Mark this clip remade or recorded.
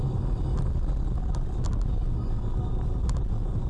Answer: recorded